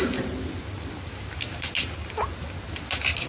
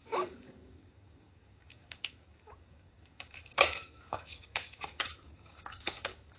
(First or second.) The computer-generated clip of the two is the second